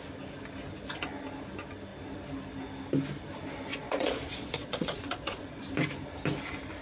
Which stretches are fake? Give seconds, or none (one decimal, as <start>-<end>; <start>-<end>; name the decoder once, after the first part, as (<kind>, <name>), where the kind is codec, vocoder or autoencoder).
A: 3.7-5.6 (vocoder, Vocos)